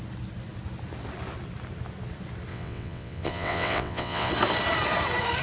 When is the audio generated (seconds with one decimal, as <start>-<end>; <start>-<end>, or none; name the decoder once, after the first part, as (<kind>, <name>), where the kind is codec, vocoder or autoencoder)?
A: 2.5-4.3 (vocoder, WaveNeXt)